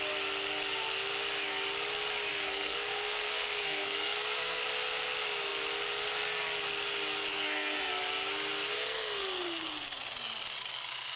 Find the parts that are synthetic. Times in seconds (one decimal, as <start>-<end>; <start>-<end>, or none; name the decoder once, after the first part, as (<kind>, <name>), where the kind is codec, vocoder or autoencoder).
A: 2.3-4.6 (codec, SNAC); 7.3-7.9; 8.7-10.0